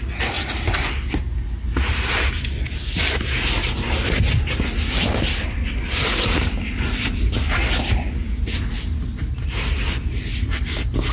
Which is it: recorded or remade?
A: recorded